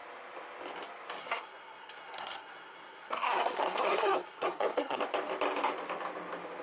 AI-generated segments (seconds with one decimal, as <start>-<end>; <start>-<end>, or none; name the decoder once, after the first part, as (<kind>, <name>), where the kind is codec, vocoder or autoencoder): 1.2-5.0 (codec, SNAC)